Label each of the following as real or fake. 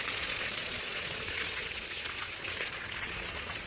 fake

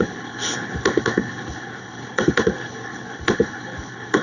fake